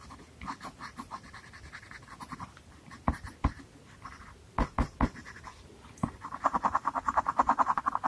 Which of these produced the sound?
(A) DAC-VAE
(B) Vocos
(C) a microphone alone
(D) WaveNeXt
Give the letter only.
C